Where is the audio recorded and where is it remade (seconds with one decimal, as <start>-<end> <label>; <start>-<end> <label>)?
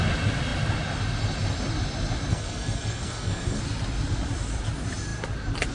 0.0-2.3 recorded; 2.3-3.6 remade; 3.6-5.7 recorded